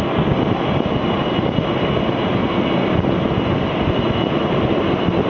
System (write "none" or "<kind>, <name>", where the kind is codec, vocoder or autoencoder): none